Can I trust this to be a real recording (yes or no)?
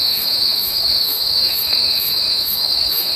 no